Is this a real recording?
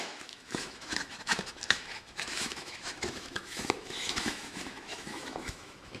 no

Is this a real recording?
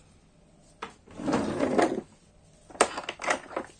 yes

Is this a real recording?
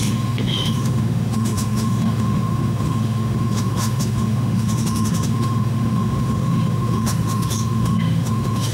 no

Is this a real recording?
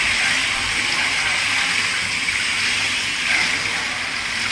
yes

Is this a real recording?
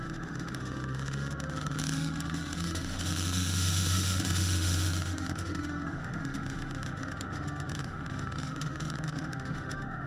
no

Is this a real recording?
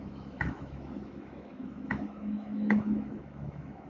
no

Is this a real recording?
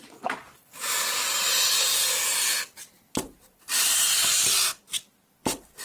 yes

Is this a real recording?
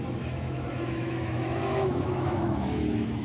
no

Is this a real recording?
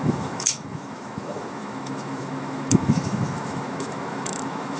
no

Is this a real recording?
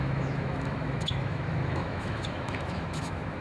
no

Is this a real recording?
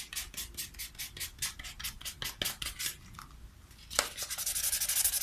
yes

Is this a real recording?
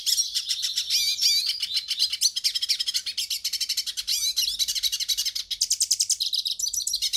yes